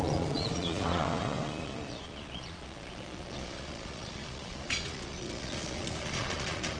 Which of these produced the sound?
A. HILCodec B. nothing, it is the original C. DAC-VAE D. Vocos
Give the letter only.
D